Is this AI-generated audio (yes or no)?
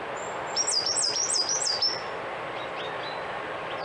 no